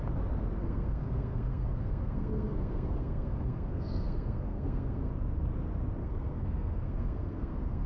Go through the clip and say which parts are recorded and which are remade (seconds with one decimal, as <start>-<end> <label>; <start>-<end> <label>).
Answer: 0.0-0.6 recorded; 0.6-5.1 remade; 5.1-6.0 recorded; 6.0-7.9 remade